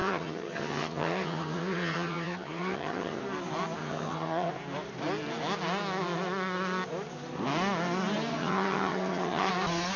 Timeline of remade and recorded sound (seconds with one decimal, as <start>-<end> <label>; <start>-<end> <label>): 0.0-3.2 remade; 3.2-3.8 recorded; 3.8-4.5 remade; 4.5-8.3 recorded; 8.3-9.5 remade; 9.5-10.0 recorded